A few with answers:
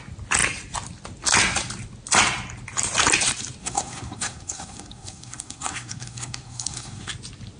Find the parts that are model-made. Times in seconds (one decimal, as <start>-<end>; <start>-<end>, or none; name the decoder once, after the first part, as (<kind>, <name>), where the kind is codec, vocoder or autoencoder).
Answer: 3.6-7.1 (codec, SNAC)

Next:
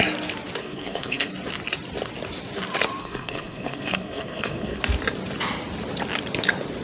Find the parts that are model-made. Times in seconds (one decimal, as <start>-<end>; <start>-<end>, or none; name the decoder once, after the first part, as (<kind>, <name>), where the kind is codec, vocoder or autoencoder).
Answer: 0.6-1.3 (codec, SNAC); 3.0-4.8

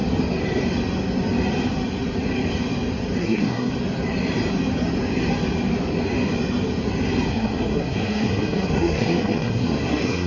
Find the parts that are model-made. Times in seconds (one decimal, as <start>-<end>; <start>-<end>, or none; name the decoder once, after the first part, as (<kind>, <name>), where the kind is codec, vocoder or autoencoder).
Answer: 3.2-3.7 (codec, SNAC); 7.3-10.3

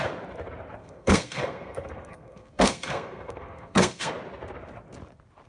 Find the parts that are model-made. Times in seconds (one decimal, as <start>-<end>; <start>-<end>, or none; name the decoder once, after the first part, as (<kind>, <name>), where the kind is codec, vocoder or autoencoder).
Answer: 0.8-4.1 (codec, SNAC)

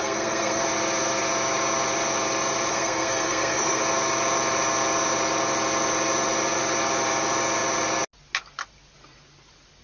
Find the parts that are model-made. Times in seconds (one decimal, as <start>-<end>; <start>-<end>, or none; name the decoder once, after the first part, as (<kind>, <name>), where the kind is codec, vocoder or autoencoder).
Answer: 0.0-0.6 (codec, SNAC); 2.7-3.8

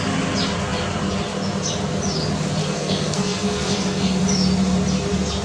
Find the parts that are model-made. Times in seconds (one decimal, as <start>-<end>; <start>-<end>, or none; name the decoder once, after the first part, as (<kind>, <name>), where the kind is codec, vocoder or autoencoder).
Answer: 2.6-4.2 (codec, SNAC)

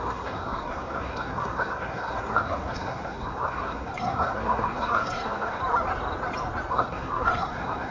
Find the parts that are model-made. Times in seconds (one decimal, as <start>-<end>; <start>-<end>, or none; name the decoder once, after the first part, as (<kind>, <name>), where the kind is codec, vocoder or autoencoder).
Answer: 0.0-5.6 (codec, SNAC); 6.7-7.9